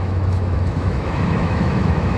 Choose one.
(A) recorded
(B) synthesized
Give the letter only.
B